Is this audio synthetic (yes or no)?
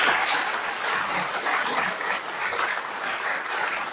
yes